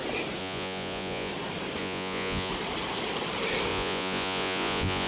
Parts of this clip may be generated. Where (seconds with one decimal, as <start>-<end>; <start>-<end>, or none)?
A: 0.4-1.3; 1.8-2.5; 3.7-5.1